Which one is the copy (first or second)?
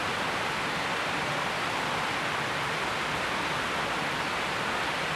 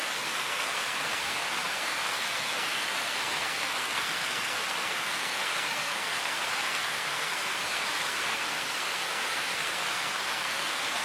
second